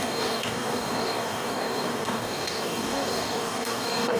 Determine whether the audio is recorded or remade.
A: remade